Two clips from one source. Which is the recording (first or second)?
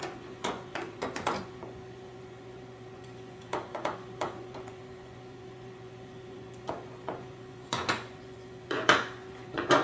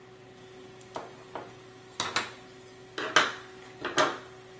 second